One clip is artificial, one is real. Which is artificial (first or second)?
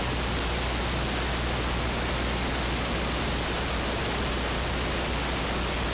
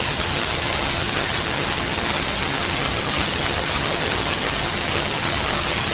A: second